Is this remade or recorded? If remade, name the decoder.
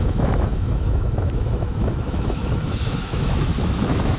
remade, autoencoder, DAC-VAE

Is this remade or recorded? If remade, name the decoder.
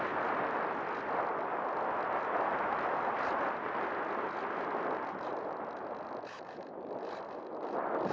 recorded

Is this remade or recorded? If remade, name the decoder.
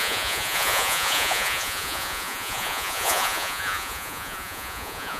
remade, vocoder, Vocos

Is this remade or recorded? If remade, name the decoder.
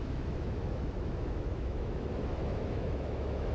remade, autoencoder, DAC-VAE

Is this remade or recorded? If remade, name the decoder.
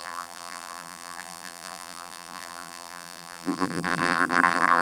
remade, vocoder, BigVGAN v2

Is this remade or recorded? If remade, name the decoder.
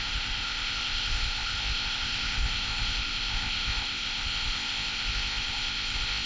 remade, codec, ZipCodec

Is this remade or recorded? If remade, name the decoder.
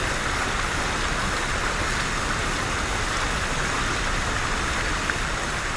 recorded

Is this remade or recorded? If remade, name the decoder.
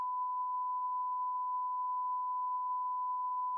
recorded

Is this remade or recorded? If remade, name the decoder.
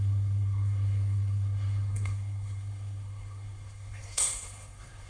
remade, codec, SNAC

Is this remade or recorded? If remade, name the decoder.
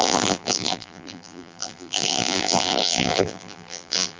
remade, vocoder, BigVGAN v2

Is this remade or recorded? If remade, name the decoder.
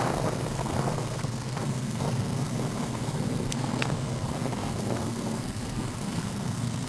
remade, codec, SNAC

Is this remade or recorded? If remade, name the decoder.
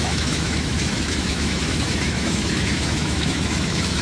remade, autoencoder, DAC-VAE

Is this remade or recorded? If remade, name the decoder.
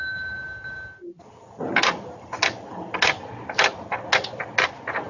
recorded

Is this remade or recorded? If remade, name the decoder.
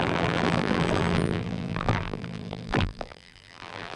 remade, vocoder, BigVGAN v2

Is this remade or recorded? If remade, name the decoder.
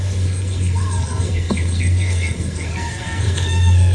remade, codec, SNAC